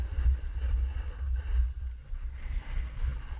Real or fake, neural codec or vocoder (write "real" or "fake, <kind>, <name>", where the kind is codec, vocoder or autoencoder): real